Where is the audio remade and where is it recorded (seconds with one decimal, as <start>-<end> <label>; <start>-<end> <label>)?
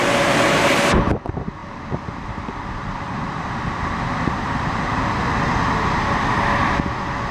0.0-1.6 recorded; 1.6-5.1 remade; 5.1-7.3 recorded